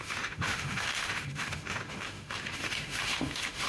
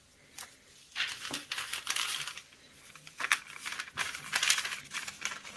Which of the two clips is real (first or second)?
second